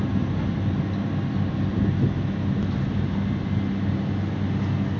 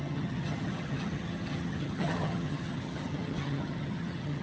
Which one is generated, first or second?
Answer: second